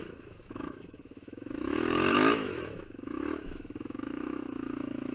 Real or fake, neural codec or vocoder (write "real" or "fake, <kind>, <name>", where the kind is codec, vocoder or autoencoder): fake, autoencoder, DAC-VAE